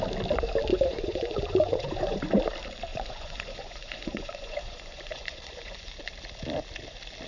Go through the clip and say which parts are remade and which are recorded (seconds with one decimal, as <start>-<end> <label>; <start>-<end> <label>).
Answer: 0.0-0.7 recorded; 0.7-2.4 remade; 2.4-2.9 recorded; 2.9-5.9 remade; 5.9-7.3 recorded